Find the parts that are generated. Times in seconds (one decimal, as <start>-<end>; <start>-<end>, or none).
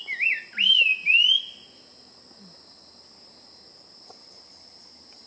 0.0-0.5; 3.2-5.3